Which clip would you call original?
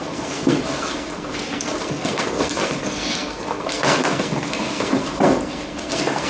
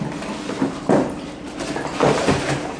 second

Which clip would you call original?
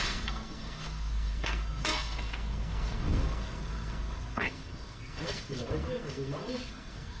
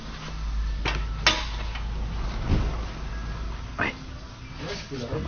second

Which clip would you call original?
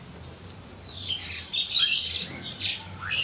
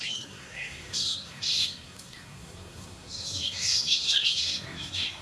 first